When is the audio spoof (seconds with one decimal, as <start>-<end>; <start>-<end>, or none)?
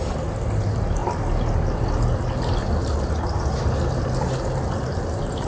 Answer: none